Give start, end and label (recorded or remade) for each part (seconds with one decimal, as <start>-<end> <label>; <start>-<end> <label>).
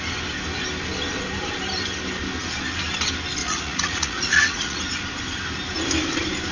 0.0-3.4 recorded; 3.4-4.8 remade; 4.8-6.5 recorded